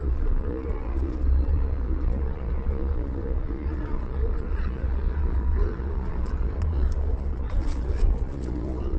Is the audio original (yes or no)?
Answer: no